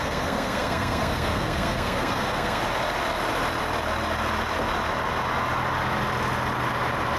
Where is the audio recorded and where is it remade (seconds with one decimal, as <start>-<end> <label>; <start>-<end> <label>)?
0.0-2.6 remade; 2.6-7.2 recorded